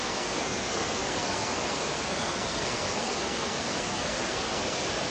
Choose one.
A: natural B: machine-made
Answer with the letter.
B